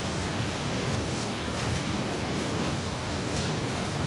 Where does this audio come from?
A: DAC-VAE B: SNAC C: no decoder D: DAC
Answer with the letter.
D